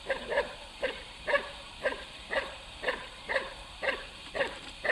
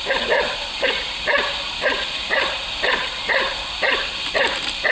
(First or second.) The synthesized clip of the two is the first